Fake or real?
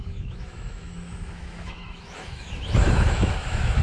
fake